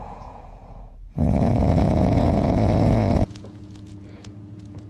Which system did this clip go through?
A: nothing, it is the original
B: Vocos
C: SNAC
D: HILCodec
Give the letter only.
B